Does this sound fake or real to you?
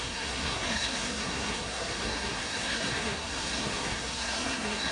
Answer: fake